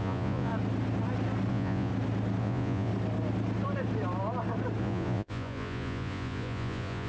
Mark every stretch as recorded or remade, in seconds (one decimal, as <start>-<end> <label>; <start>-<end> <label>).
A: 0.0-0.5 remade; 0.5-1.5 recorded; 1.5-1.9 remade; 1.9-2.4 recorded; 2.4-2.9 remade; 2.9-4.8 recorded; 4.8-7.1 remade